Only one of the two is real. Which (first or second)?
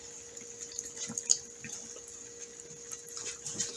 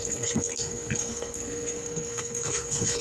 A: first